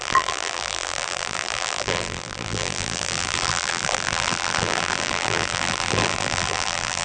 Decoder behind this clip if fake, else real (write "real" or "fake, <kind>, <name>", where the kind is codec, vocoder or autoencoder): fake, vocoder, BigVGAN v2